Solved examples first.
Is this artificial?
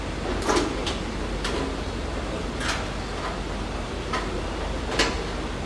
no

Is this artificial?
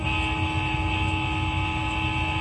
no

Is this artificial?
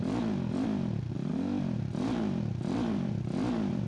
no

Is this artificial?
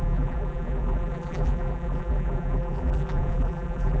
yes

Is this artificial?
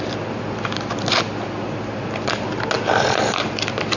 no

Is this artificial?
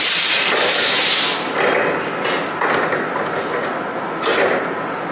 no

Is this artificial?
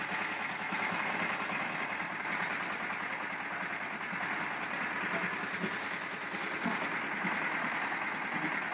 no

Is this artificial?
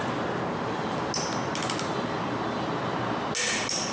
no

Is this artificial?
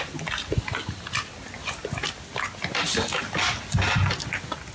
no